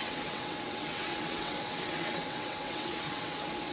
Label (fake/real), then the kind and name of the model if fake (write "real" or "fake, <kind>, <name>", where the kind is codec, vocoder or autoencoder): fake, vocoder, WaveNeXt